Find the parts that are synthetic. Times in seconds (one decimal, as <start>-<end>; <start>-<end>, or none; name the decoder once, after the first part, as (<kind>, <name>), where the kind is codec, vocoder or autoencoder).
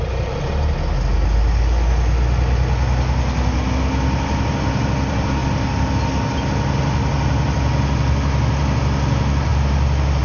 none